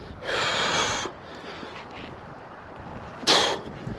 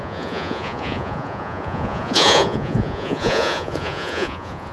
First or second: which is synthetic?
second